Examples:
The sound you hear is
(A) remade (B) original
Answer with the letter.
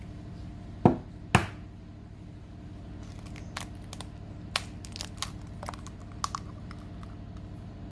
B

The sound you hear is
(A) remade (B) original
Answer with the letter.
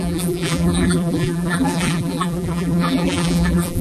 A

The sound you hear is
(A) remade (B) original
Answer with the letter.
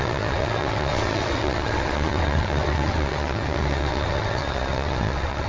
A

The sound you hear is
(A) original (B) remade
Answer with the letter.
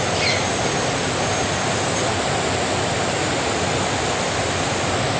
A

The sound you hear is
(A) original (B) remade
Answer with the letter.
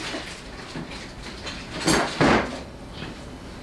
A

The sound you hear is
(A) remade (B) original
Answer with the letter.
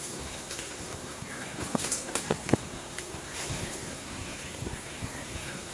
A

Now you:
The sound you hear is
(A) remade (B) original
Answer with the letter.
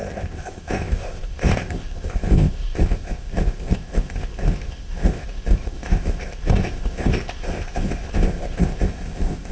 A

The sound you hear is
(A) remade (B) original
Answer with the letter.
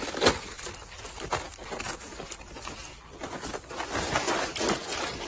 B